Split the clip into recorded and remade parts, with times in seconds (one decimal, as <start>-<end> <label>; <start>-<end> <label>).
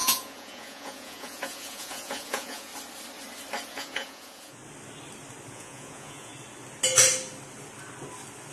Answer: 0.0-2.7 remade; 2.7-3.7 recorded; 3.7-4.6 remade; 4.6-5.5 recorded; 5.5-6.3 remade; 6.3-8.5 recorded